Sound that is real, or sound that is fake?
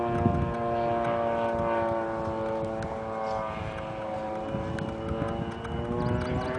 real